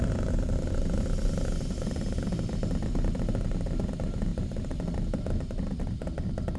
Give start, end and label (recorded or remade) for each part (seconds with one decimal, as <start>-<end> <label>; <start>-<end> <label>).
0.0-6.6 recorded